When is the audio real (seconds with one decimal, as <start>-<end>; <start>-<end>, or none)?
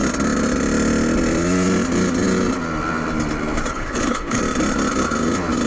0.0-3.7; 4.4-5.7